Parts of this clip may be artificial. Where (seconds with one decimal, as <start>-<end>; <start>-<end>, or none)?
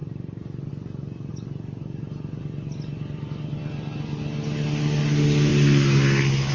0.0-0.7; 1.3-2.4